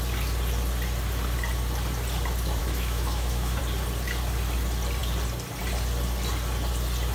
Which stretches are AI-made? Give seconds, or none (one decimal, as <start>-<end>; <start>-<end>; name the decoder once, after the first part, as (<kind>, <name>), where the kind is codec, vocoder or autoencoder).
2.6-3.6 (autoencoder, DAC-VAE)